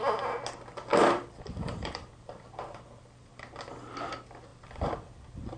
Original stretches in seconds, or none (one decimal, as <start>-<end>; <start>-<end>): 0.0-0.9; 3.3-4.5

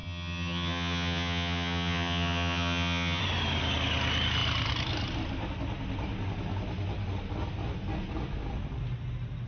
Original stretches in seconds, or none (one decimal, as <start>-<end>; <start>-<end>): 3.2-9.5

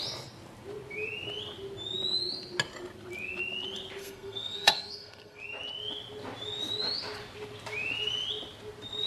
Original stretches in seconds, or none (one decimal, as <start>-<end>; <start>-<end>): 0.0-4.0; 5.4-9.1

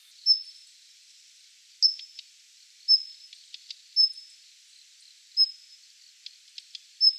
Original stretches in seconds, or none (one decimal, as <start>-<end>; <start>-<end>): 0.0-7.2